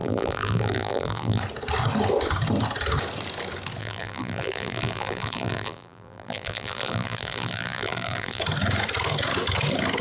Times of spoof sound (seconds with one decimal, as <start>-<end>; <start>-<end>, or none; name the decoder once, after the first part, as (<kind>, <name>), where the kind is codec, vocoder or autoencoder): 0.0-1.4 (vocoder, BigVGAN v2); 3.8-8.4

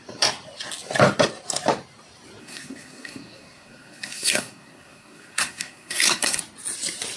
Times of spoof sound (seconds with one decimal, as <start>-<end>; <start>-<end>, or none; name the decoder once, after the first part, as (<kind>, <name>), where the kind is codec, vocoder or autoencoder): 2.4-6.4 (codec, SNAC)

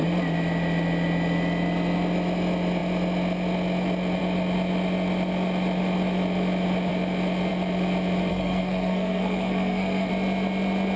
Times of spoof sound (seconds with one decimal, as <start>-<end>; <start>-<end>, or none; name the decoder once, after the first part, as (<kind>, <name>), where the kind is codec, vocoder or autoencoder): 8.3-10.1 (codec, SNAC)